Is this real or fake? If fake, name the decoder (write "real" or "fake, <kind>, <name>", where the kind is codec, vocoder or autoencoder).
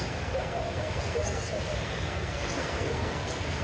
fake, codec, SNAC